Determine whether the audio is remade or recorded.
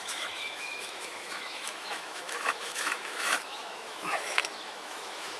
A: remade